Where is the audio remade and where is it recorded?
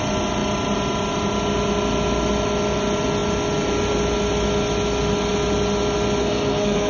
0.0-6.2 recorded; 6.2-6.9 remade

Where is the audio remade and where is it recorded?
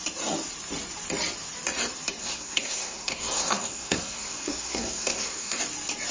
0.0-2.2 recorded; 2.2-5.6 remade; 5.6-6.1 recorded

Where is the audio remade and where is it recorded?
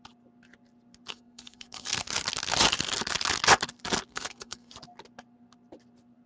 0.0-1.1 recorded; 1.1-2.0 remade; 2.0-4.1 recorded; 4.1-4.7 remade; 4.7-6.3 recorded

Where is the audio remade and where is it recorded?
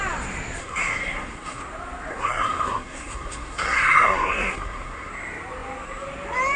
0.0-0.6 recorded; 0.6-1.6 remade; 1.6-2.1 recorded; 2.1-5.1 remade; 5.1-6.6 recorded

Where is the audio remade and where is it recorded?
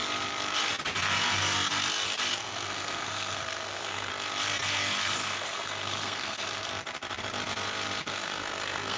0.0-2.4 recorded; 2.4-4.1 remade; 4.1-5.2 recorded; 5.2-6.7 remade; 6.7-8.1 recorded; 8.1-9.0 remade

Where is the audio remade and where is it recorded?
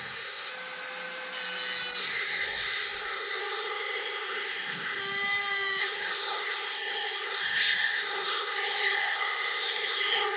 0.0-0.5 remade; 0.5-2.0 recorded; 2.0-5.0 remade; 5.0-5.8 recorded; 5.8-10.4 remade